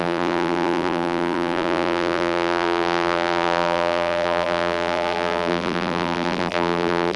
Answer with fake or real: fake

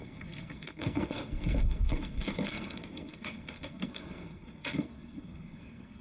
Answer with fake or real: fake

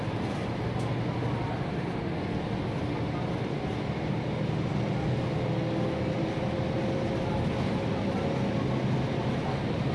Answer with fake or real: real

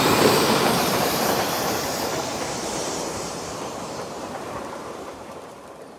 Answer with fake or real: fake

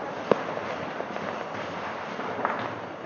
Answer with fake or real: real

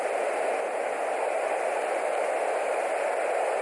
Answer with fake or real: real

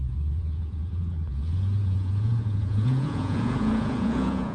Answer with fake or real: fake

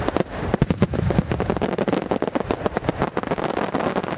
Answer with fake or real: real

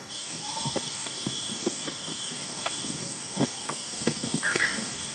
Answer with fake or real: fake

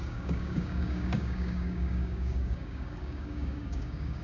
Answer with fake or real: fake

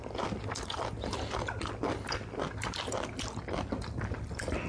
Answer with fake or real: real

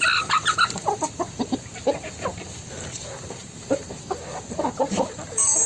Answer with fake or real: fake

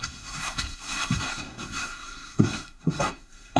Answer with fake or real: fake